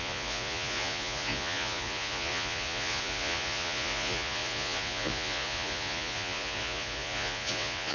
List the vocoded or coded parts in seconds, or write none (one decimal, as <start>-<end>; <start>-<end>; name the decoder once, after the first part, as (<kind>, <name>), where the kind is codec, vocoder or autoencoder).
0.0-7.9 (vocoder, Vocos)